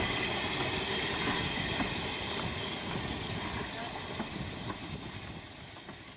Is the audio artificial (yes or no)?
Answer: yes